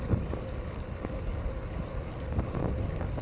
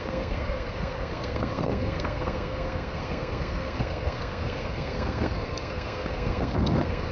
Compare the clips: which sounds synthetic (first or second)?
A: second